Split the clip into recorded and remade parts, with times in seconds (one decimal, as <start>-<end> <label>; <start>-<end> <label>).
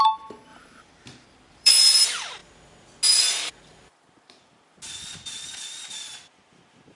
0.0-0.5 recorded; 0.5-1.7 remade; 1.7-6.9 recorded